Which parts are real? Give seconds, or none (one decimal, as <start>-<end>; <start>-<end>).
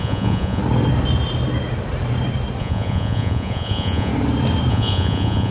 0.6-2.6; 4.1-4.7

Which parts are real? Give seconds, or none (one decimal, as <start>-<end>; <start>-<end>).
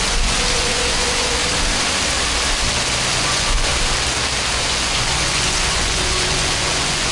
1.4-3.1; 3.7-4.5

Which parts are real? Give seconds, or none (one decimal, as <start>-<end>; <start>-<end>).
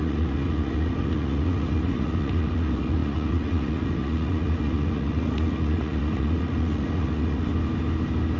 7.5-8.4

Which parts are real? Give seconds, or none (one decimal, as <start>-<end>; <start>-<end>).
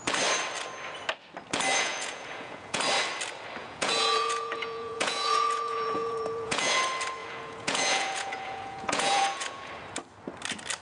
0.0-1.7; 2.8-3.6; 6.8-7.2; 9.7-10.8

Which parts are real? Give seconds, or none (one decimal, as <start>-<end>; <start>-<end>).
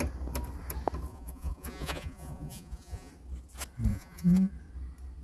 0.0-1.1; 3.1-3.9; 4.5-5.2